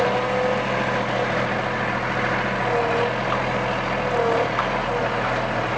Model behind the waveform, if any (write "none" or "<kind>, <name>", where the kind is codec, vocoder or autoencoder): none